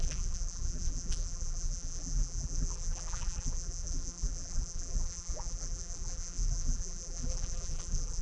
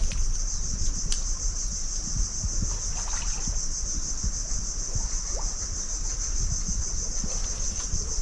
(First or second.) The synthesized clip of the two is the first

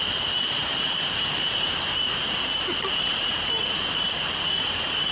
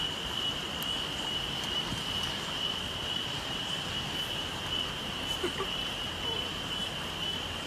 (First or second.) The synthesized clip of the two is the first